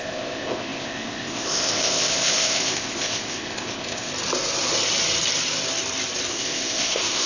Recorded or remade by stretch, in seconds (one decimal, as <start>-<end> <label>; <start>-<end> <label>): 0.0-4.1 remade; 4.1-6.3 recorded; 6.3-7.3 remade